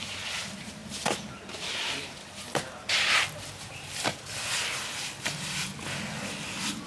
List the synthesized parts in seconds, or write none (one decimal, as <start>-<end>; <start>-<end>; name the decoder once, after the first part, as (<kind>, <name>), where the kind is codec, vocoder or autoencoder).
none